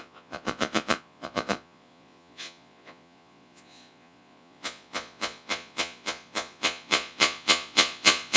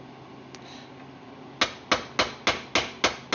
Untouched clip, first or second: second